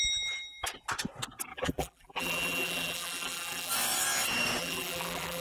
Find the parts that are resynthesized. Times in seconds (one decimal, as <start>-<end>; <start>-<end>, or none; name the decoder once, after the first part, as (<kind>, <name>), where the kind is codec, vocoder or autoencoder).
1.5-3.7 (vocoder, BigVGAN v2); 4.6-5.4